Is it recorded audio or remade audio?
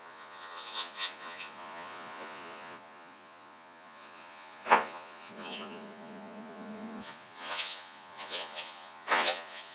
remade